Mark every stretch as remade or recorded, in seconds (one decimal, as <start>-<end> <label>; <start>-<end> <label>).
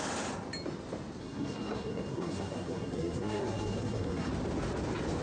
0.0-1.2 recorded; 1.2-4.3 remade; 4.3-5.2 recorded